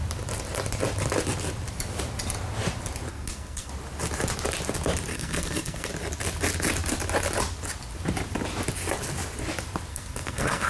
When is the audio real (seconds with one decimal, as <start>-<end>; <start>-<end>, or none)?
0.0-3.1; 3.7-5.1; 5.9-9.9